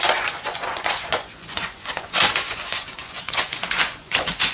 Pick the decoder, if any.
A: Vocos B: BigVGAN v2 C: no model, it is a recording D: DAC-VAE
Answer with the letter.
A